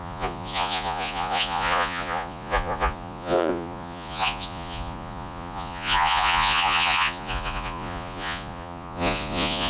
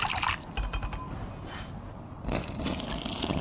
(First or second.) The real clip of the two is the second